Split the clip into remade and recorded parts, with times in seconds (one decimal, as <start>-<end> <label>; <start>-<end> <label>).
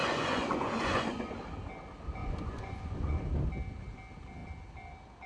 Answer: 0.0-1.3 remade; 1.3-2.2 recorded; 2.2-3.2 remade; 3.2-5.3 recorded